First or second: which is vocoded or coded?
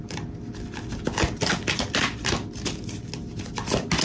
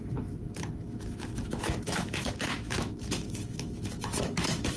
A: second